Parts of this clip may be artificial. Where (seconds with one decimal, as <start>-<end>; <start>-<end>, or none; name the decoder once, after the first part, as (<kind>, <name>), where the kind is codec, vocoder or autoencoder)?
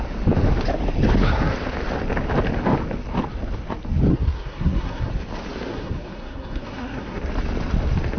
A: 4.1-5.1 (codec, SNAC); 5.7-7.2